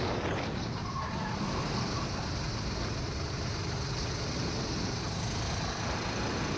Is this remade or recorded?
recorded